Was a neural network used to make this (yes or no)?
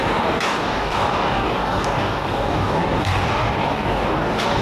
yes